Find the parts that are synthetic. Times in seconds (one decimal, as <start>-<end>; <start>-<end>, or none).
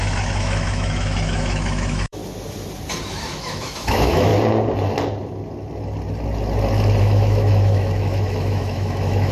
0.0-2.2; 3.1-4.3; 7.0-9.3